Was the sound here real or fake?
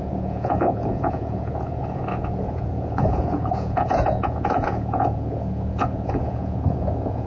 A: fake